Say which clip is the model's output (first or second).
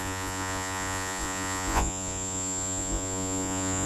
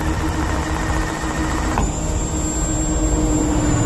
first